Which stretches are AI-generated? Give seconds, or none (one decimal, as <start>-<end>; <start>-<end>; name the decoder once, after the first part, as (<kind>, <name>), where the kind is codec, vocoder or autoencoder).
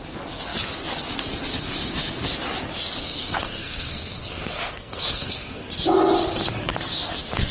3.0-5.6 (codec, SNAC)